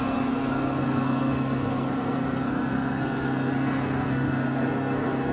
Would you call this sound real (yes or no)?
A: no